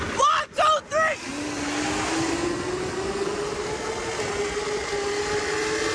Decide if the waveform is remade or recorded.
recorded